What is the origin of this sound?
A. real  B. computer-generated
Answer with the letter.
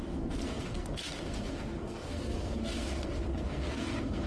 B